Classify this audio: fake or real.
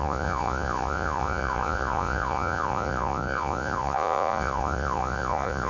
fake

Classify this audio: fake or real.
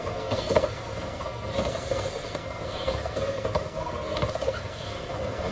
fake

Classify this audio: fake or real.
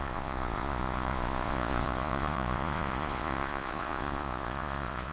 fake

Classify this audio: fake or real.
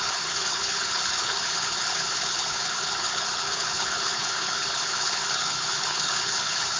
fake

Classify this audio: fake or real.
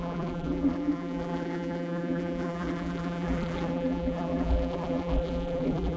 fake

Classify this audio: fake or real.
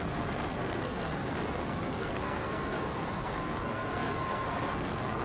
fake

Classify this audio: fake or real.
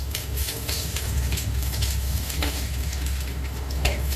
fake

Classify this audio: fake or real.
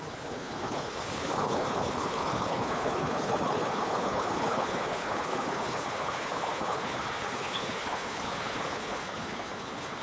fake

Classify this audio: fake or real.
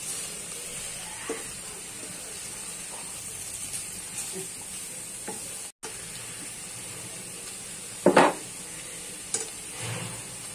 real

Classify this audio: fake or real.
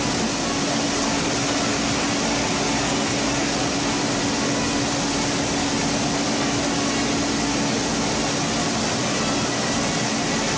real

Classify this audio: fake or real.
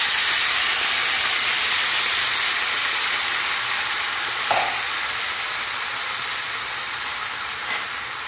real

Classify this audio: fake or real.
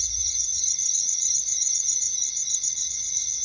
fake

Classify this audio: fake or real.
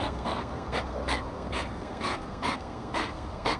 fake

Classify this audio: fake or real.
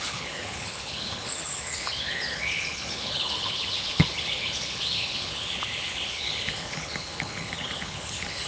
fake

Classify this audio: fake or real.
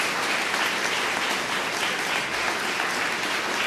real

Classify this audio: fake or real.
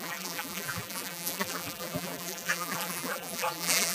fake